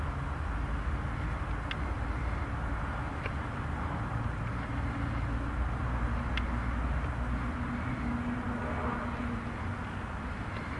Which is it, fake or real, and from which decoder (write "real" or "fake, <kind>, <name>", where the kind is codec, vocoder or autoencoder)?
real